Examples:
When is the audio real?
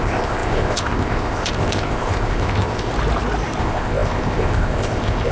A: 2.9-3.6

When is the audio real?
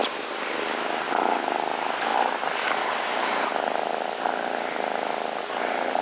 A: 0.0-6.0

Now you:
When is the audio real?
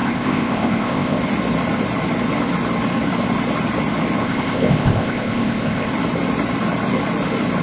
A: 1.2-4.2; 5.9-7.6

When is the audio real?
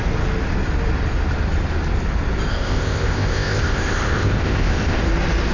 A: 0.0-2.5; 5.0-5.5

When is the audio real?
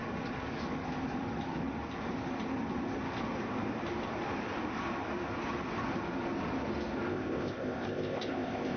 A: 0.0-7.1